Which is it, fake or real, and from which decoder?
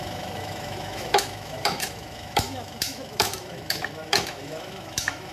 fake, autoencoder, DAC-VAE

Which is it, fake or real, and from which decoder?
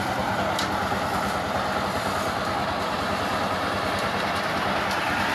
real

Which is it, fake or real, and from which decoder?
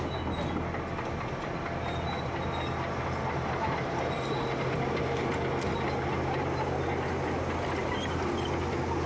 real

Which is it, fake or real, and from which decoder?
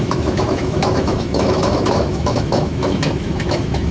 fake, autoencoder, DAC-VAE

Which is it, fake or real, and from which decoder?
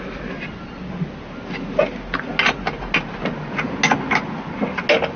real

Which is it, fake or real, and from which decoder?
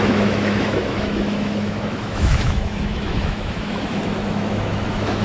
fake, autoencoder, DAC-VAE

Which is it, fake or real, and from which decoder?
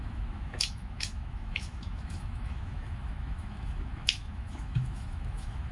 fake, autoencoder, DAC-VAE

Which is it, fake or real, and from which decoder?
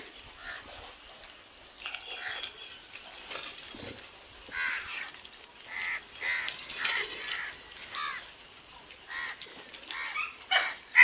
real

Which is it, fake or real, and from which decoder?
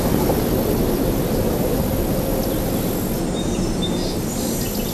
real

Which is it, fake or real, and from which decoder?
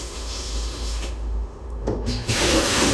fake, autoencoder, DAC-VAE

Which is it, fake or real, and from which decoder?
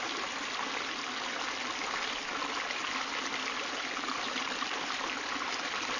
real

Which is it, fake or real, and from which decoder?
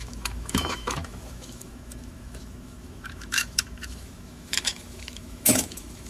fake, autoencoder, DAC-VAE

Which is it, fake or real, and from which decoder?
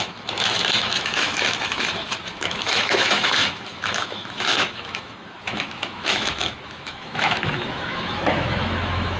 fake, autoencoder, DAC-VAE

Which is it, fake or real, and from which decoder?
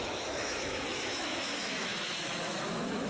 fake, autoencoder, DAC-VAE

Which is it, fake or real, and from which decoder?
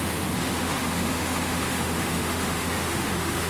fake, autoencoder, DAC-VAE